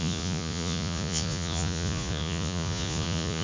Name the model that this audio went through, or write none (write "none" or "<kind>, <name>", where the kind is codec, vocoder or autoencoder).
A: vocoder, Vocos